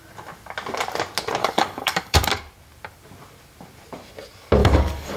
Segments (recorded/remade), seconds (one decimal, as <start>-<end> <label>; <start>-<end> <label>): 0.0-1.4 recorded; 1.4-2.4 remade; 2.4-4.6 recorded; 4.6-5.2 remade